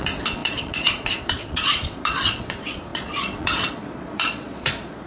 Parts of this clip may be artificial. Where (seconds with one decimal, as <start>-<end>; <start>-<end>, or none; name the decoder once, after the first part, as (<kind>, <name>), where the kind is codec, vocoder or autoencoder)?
0.0-5.1 (vocoder, Vocos)

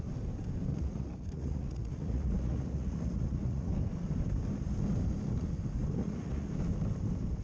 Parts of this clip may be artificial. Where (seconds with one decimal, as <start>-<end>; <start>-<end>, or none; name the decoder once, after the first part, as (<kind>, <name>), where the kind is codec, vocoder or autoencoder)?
0.7-3.7 (vocoder, Vocos); 6.0-6.5

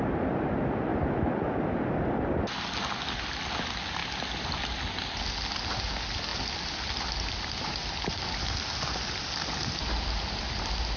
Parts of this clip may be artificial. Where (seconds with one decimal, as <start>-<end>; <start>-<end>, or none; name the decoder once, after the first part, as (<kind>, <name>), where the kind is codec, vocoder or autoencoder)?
none

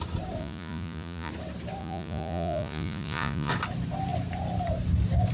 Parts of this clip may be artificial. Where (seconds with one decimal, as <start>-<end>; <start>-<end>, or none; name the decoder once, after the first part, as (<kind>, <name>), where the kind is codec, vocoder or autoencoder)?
0.4-1.3 (vocoder, Vocos); 1.8-3.5

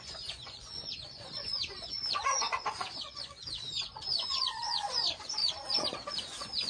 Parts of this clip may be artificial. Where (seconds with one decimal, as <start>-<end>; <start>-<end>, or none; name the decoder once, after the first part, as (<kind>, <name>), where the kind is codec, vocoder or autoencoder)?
0.0-6.7 (vocoder, Vocos)